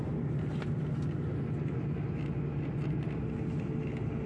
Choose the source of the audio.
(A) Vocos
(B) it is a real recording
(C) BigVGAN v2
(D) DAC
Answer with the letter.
B